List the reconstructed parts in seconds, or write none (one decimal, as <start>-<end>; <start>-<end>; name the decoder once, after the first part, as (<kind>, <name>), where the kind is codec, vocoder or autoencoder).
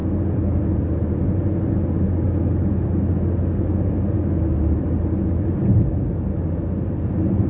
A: none